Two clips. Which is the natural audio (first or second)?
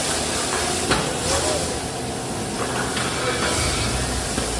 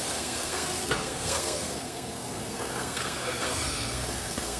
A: first